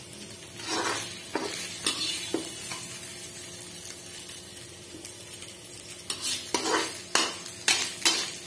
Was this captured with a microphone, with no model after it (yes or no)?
yes